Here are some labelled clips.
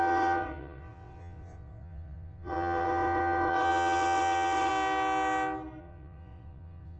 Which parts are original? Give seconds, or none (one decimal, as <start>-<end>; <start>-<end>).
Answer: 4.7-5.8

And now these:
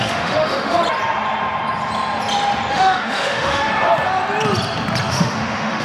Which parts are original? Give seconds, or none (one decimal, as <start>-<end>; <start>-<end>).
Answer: 0.8-2.7; 3.7-5.1

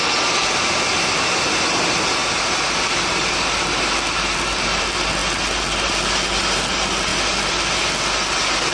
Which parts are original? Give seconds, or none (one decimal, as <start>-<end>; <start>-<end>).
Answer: 0.0-8.7

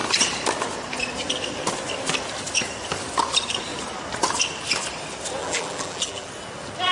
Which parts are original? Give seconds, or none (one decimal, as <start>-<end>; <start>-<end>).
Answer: 0.0-5.4; 6.3-6.9